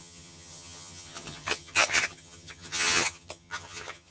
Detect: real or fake fake